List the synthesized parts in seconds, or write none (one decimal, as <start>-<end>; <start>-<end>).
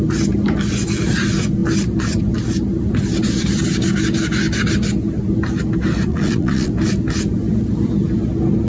6.1-6.7